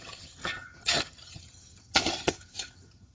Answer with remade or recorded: remade